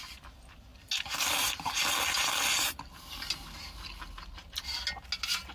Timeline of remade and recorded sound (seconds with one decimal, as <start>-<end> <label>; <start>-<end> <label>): 0.0-5.5 recorded